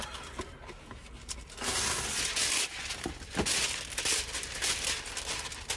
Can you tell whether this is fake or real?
real